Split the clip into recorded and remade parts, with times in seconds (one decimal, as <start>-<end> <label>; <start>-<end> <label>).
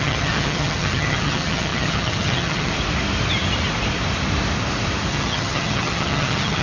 0.0-2.7 remade; 2.7-5.1 recorded; 5.1-6.6 remade